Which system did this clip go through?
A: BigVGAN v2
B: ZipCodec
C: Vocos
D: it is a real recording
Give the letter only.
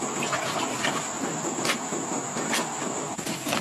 D